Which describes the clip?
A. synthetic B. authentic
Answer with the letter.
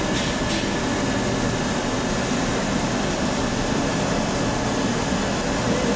B